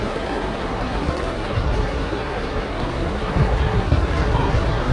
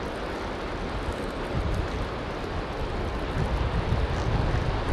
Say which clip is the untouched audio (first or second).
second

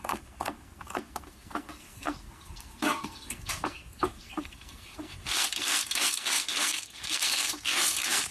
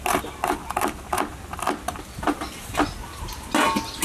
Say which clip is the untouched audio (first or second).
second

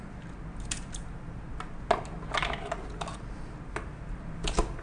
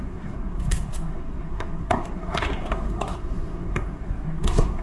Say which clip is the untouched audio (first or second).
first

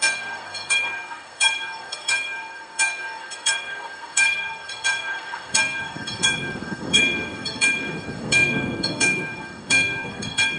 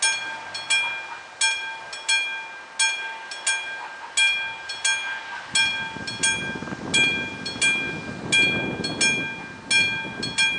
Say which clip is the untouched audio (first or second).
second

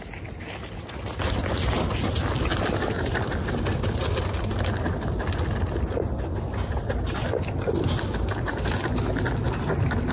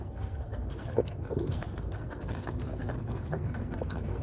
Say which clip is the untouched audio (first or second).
first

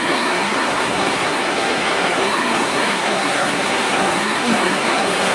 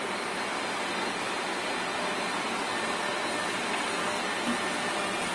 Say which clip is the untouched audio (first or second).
second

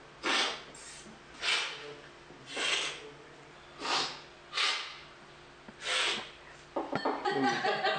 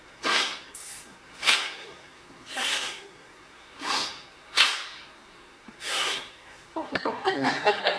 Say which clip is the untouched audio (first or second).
first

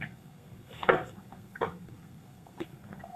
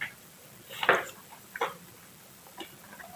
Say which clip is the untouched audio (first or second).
second